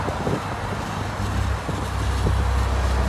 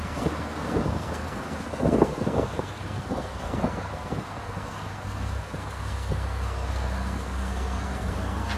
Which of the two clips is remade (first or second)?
second